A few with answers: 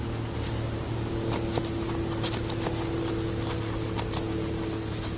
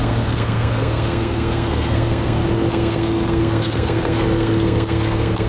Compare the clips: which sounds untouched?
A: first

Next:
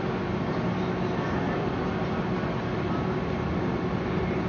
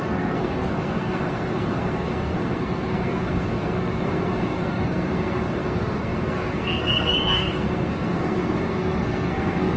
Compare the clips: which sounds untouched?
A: first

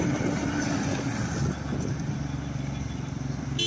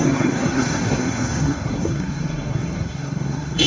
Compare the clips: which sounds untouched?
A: first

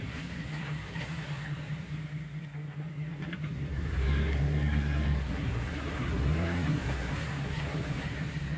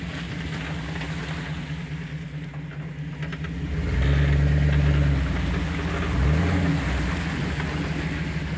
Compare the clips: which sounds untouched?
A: second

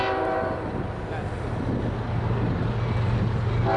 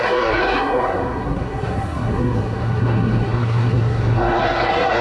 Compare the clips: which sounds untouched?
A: first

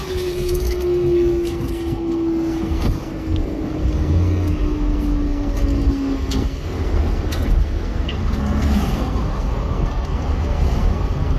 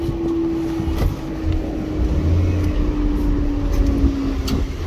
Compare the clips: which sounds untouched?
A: second